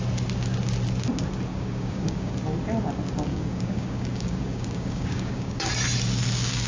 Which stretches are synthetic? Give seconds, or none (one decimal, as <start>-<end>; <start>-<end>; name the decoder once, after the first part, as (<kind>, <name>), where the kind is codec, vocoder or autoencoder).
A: 1.5-2.3 (codec, DAC); 3.3-5.7